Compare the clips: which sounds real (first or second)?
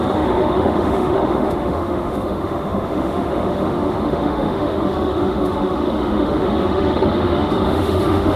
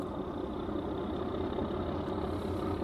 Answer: second